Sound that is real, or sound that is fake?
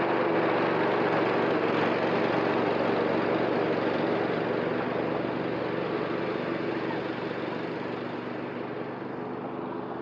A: real